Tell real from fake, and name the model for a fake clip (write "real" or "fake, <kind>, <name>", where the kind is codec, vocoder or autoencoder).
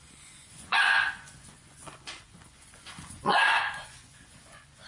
fake, vocoder, Vocos